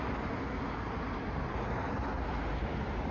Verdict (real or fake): real